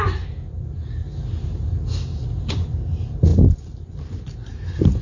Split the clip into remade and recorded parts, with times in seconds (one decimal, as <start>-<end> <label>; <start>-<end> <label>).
0.0-5.0 recorded